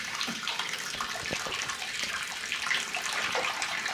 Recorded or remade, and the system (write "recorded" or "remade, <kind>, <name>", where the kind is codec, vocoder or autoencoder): remade, vocoder, BigVGAN v2